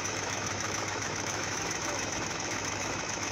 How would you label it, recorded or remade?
remade